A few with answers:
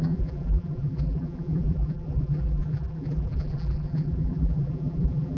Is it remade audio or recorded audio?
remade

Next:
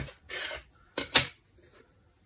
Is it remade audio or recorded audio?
recorded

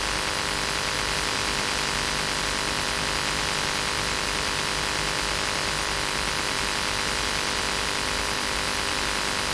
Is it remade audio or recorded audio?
remade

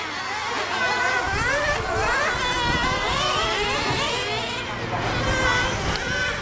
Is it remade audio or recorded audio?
recorded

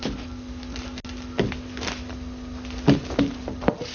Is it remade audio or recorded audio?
recorded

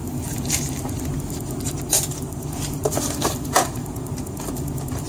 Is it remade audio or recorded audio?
remade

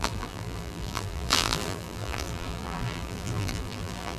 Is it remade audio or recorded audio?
remade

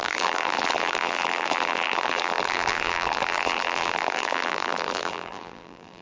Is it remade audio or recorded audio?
remade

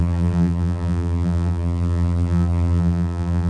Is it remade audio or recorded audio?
remade